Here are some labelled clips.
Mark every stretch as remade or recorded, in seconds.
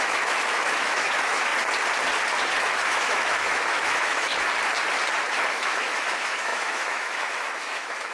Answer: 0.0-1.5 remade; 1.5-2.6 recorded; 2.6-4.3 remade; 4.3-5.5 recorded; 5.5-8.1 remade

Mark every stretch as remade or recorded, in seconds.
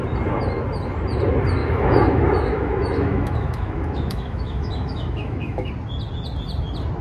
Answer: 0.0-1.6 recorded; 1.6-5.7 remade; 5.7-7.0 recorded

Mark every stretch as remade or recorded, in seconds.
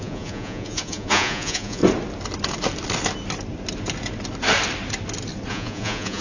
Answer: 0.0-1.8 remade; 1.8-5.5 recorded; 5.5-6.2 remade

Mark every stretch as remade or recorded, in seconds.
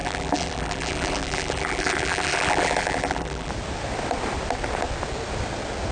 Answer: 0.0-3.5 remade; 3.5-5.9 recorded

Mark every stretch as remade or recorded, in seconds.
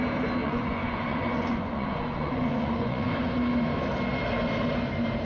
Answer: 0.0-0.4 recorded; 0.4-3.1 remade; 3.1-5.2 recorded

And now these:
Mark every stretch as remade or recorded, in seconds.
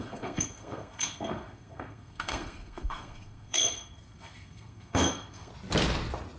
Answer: 0.0-5.5 remade; 5.5-6.4 recorded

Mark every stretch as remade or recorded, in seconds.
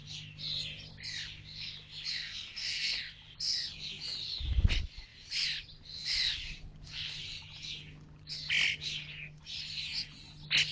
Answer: 0.0-2.1 recorded; 2.1-3.0 remade; 3.0-10.7 recorded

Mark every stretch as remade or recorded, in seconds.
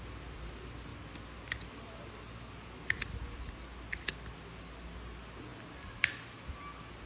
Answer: 0.0-7.1 recorded